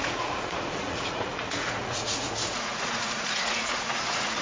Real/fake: fake